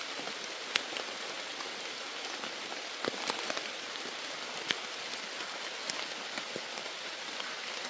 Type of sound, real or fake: real